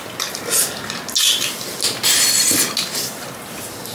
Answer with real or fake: real